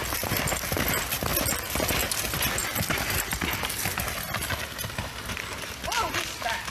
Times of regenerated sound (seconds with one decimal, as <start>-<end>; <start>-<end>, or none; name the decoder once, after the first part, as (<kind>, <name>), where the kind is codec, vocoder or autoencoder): none